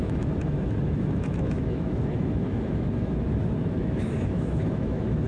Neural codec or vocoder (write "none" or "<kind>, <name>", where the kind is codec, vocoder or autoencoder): autoencoder, DAC-VAE